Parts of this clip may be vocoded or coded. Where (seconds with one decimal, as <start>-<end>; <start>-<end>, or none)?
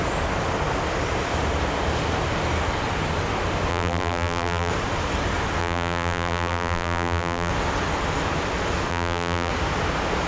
3.7-4.7; 5.6-7.5; 8.9-9.5